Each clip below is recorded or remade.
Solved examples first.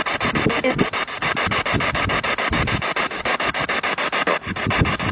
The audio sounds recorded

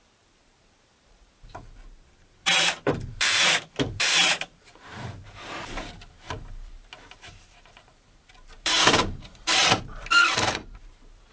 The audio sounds remade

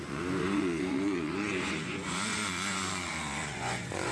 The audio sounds remade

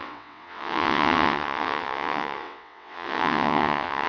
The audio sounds remade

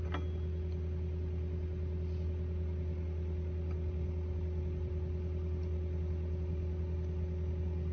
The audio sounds recorded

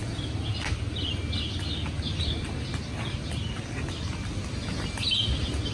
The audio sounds recorded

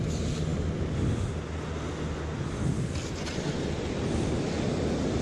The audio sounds recorded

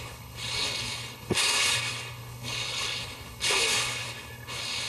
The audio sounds remade